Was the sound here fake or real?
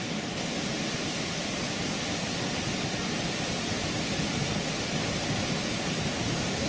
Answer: real